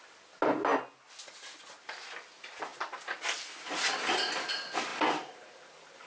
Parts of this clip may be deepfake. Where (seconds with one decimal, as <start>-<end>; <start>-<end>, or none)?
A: none